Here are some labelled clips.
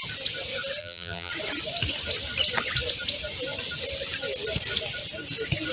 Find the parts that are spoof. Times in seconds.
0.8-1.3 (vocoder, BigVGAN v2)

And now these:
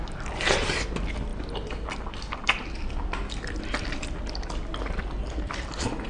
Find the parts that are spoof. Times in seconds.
0.0-6.1 (vocoder, BigVGAN v2)

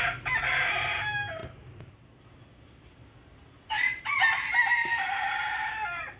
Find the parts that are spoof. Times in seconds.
0.0-1.4 (vocoder, BigVGAN v2); 5.1-6.2

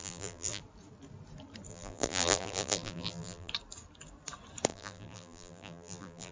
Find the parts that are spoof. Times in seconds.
0.0-0.6 (vocoder, BigVGAN v2); 1.7-3.5; 4.7-6.3

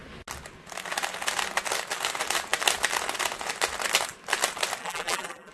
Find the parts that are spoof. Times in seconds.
4.8-5.5 (vocoder, BigVGAN v2)